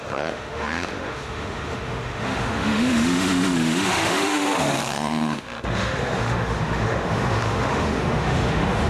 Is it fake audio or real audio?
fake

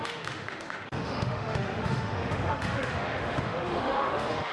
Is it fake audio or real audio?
fake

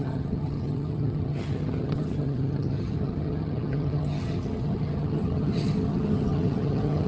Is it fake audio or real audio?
fake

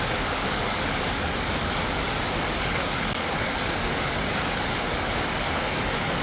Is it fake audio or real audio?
fake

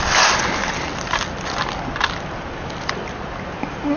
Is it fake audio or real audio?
real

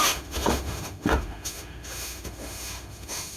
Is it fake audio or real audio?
fake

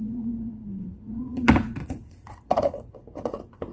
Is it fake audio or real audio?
fake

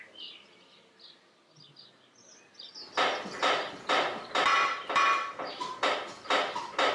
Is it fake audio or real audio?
real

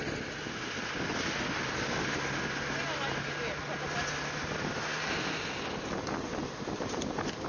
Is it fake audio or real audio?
real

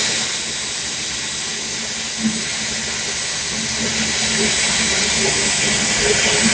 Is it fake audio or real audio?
real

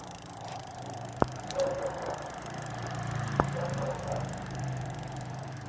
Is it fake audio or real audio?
fake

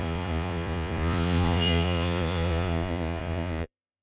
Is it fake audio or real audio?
fake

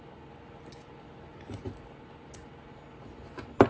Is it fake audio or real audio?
real